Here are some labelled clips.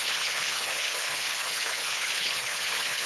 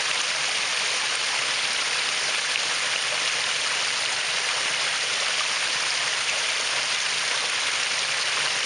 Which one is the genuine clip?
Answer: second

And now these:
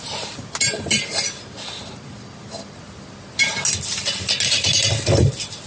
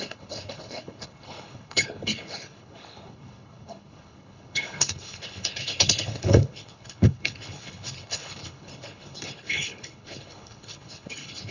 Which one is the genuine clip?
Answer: first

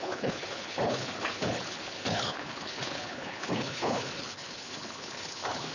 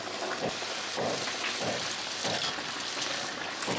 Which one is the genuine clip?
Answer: second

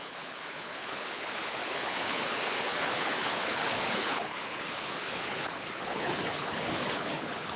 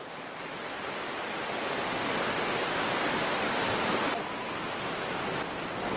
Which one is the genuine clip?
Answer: second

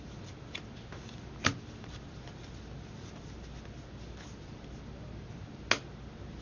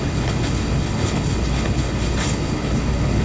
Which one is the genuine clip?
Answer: first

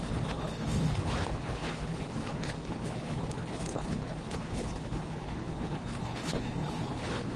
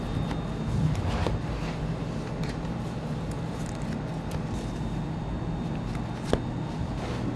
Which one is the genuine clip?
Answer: second